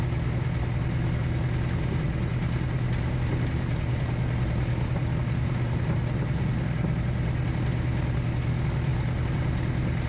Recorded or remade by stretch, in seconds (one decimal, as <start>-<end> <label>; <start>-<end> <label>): 0.0-10.1 recorded